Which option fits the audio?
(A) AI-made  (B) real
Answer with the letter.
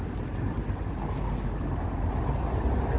B